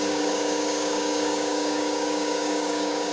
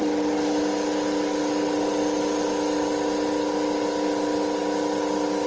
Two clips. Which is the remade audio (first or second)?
first